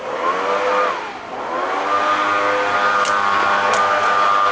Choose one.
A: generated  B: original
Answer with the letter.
B